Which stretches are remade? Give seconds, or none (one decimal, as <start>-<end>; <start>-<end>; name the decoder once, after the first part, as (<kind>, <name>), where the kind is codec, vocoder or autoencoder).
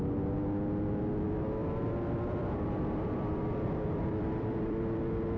1.6-4.8 (vocoder, BigVGAN v2)